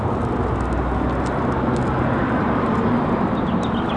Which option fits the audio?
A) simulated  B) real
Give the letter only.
B